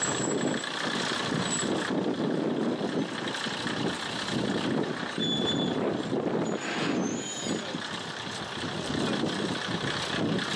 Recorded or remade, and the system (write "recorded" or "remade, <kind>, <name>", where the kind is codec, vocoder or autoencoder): recorded